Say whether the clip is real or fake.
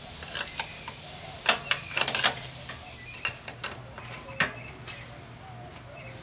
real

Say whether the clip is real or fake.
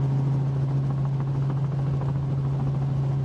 real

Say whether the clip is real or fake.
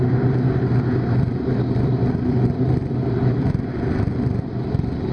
real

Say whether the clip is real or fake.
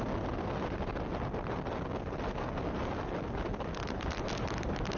real